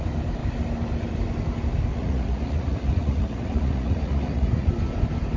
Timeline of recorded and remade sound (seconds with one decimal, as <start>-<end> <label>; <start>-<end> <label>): 0.0-1.9 recorded; 1.9-4.7 remade; 4.7-5.4 recorded